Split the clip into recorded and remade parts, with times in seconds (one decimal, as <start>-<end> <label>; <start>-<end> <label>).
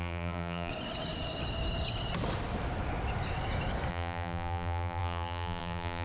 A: 0.0-0.7 remade; 0.7-3.9 recorded; 3.9-6.0 remade